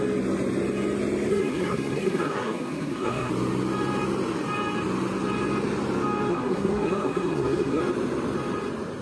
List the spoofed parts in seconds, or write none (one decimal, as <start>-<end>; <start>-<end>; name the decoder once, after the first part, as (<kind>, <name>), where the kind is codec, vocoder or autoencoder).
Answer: 1.3-3.3 (codec, SNAC); 6.3-7.8